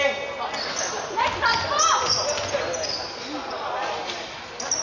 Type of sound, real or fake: real